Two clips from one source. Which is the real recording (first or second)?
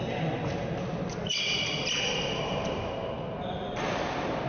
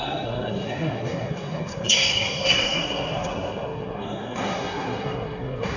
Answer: first